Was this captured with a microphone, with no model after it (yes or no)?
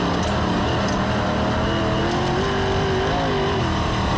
yes